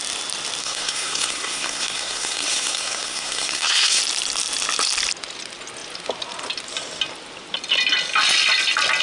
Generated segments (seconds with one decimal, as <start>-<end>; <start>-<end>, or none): 0.6-4.0